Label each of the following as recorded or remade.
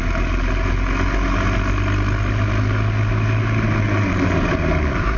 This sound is recorded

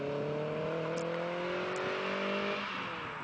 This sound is recorded